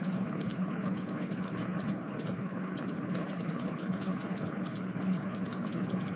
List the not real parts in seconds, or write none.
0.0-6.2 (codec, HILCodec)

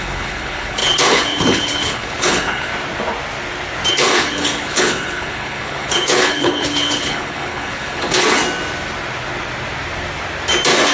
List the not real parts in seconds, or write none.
0.0-2.7 (codec, HILCodec); 3.9-8.4

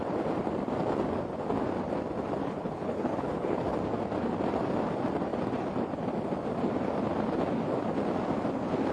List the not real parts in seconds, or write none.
2.4-3.6 (codec, HILCodec)

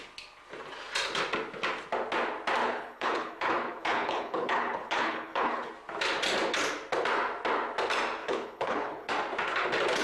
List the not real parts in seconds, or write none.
2.6-5.7 (codec, HILCodec); 8.2-9.1

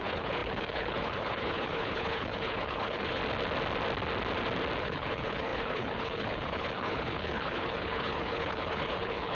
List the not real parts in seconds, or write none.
0.0-3.2 (codec, HILCodec); 4.8-9.3

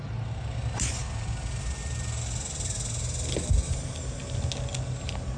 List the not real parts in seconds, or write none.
none

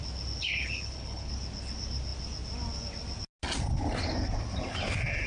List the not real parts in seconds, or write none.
0.4-1.3 (codec, HILCodec)